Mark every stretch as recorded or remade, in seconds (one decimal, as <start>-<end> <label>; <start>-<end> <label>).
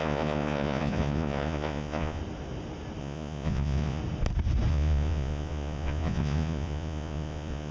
0.0-2.2 remade; 2.2-3.0 recorded; 3.0-4.0 remade; 4.0-4.7 recorded; 4.7-7.7 remade